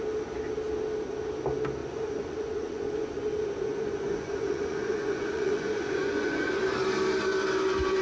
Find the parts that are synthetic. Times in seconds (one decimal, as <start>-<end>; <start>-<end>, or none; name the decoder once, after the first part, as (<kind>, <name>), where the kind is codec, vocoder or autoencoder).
1.8-6.6 (vocoder, Vocos)